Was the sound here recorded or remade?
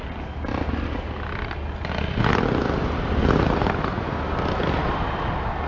recorded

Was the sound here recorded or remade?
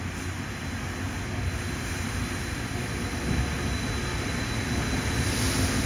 recorded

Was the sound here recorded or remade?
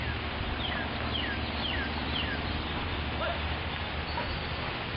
remade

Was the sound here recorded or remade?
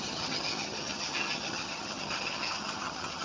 remade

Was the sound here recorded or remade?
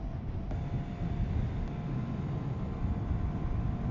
recorded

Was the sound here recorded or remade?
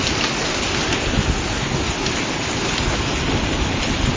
recorded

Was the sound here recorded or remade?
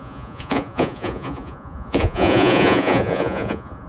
remade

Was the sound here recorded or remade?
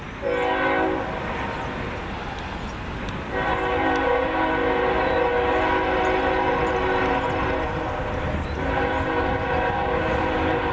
recorded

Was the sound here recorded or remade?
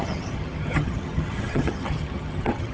remade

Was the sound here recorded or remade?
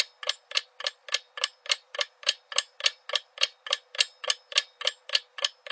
recorded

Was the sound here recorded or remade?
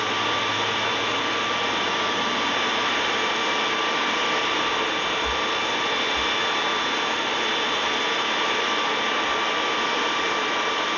recorded